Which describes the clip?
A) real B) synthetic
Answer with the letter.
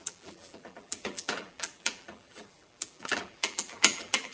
B